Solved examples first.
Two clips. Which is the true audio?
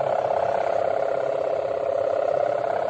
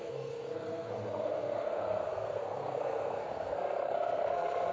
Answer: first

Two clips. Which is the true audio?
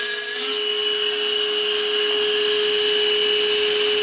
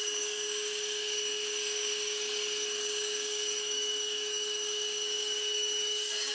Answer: first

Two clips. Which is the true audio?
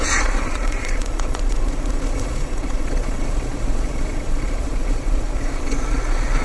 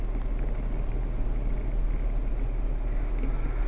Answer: second